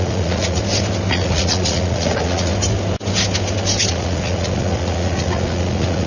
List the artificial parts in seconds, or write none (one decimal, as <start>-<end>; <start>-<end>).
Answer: 0.0-0.6; 1.1-2.5; 3.9-6.1